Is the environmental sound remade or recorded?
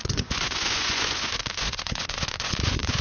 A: remade